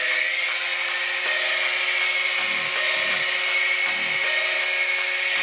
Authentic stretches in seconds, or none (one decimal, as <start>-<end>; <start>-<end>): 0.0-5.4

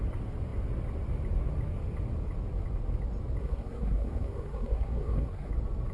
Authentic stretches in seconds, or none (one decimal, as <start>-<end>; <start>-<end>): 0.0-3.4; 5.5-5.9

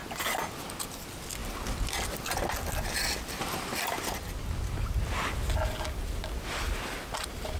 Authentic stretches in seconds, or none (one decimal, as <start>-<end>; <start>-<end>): 0.0-7.6